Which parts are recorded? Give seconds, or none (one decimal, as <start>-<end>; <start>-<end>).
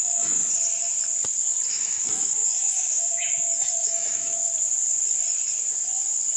0.4-1.7; 4.4-6.4